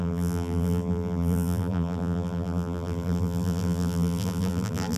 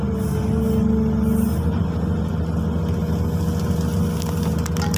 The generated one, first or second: first